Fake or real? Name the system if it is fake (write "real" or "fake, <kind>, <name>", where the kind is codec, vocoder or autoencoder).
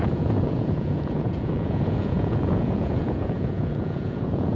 fake, vocoder, Vocos